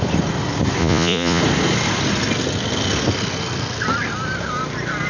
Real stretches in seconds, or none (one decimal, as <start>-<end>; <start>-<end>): 0.0-0.8; 1.4-5.1